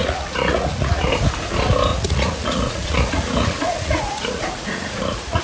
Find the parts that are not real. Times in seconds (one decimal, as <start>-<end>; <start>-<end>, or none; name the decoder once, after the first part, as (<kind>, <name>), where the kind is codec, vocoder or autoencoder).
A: 0.0-1.1 (vocoder, Vocos); 1.9-5.4